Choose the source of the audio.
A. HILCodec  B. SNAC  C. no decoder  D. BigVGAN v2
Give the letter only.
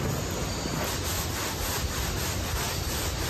C